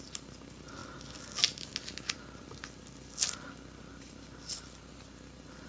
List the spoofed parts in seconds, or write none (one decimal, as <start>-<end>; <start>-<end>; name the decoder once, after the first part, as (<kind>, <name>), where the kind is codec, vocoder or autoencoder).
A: none